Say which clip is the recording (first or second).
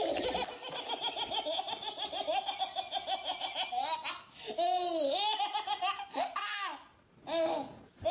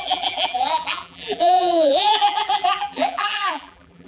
first